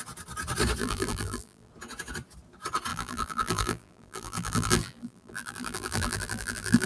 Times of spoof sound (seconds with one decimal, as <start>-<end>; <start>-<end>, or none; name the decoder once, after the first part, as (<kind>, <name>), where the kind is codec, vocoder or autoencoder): 0.8-1.7 (vocoder, BigVGAN v2); 2.9-6.9

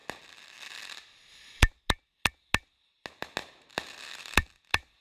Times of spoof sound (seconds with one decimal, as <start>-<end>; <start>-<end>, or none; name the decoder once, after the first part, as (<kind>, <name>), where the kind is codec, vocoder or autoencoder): none